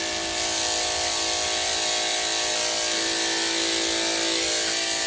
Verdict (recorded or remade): recorded